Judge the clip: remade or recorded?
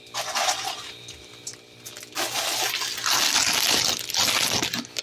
recorded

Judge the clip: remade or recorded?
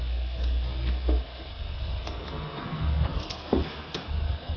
remade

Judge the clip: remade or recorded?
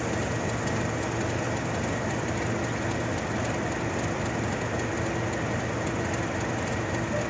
recorded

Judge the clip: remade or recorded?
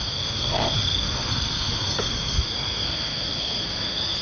remade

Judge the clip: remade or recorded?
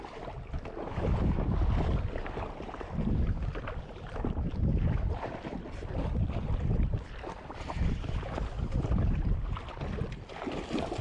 recorded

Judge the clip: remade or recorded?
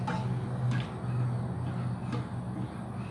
recorded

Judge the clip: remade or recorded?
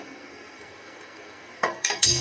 remade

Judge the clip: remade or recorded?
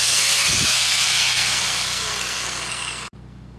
remade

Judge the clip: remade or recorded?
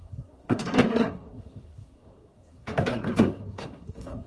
remade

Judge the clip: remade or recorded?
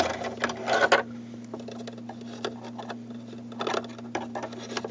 recorded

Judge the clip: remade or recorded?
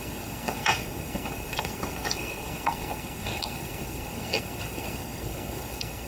remade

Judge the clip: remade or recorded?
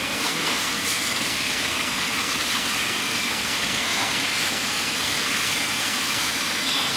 remade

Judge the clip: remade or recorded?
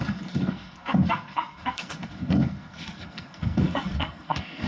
remade